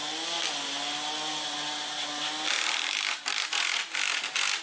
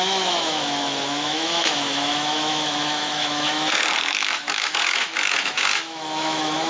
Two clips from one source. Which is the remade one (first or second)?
second